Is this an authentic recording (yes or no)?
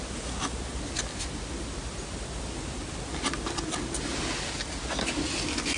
yes